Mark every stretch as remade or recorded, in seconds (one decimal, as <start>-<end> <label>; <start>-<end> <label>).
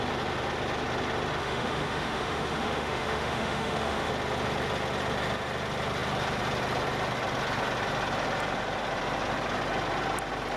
0.0-1.4 recorded; 1.4-4.1 remade; 4.1-10.6 recorded